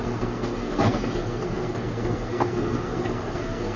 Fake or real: fake